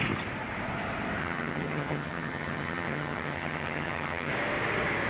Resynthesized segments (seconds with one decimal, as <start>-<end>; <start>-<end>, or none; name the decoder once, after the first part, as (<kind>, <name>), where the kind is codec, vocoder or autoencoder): 1.2-4.3 (vocoder, HiFi-GAN)